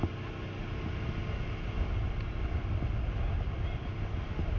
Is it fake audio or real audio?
real